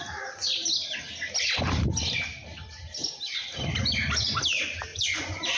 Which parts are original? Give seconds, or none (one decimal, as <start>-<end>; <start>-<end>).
0.0-4.9